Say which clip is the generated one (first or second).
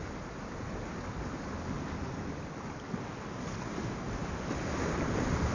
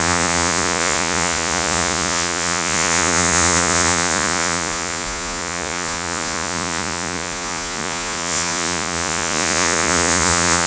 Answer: second